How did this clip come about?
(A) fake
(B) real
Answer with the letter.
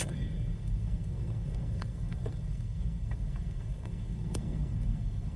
A